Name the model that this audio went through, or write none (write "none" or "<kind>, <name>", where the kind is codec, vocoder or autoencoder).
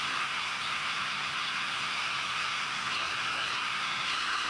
codec, SNAC